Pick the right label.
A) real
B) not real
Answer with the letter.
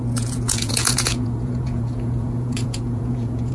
B